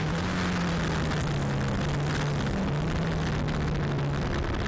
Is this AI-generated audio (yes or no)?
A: no